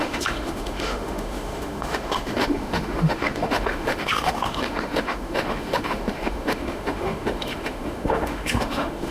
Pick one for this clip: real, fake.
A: fake